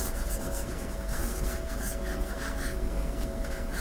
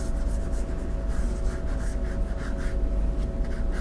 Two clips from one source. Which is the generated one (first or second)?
first